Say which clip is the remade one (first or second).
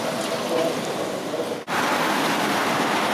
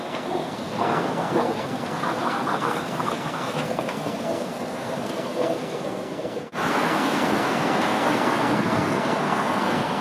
second